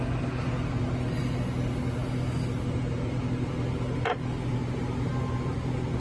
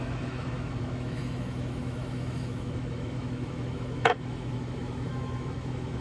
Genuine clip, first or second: first